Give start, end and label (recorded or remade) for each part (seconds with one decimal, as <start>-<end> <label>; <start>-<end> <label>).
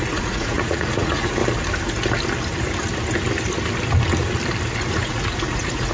0.0-1.4 remade; 1.4-4.9 recorded; 4.9-5.9 remade